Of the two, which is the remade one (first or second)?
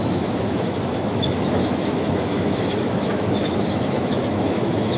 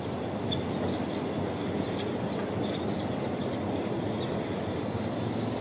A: first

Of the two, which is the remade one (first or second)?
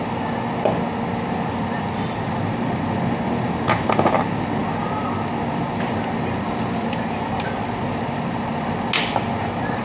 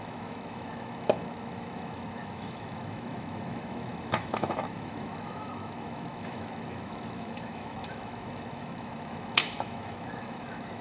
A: second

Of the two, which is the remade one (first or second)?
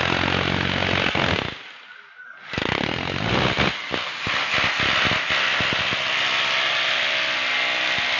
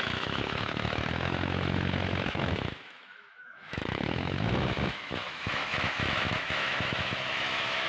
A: second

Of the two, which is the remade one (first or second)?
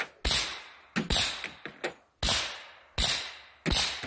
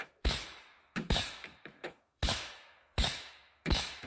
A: second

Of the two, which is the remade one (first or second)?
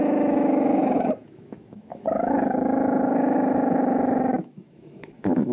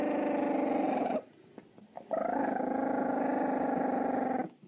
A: first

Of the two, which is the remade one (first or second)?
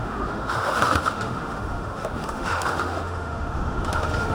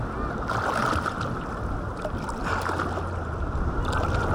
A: first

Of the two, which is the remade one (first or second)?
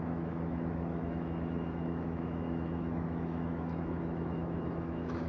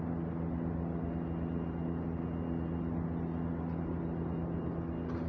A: first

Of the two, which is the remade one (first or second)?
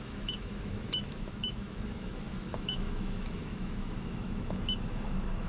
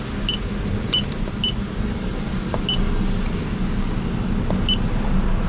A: first